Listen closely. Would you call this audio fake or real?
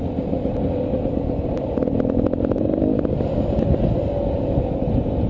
real